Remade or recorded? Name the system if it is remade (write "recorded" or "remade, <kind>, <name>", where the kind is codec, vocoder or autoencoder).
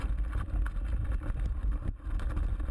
remade, vocoder, BigVGAN v2